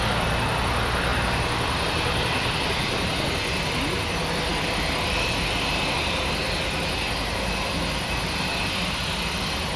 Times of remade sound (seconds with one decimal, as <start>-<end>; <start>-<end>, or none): none